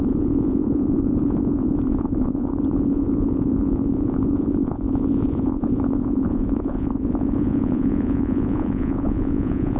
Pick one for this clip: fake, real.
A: fake